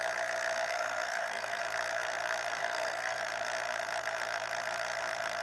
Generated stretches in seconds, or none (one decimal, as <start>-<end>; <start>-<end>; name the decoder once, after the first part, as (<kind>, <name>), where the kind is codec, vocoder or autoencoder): 0.7-1.6 (codec, SNAC); 2.6-3.2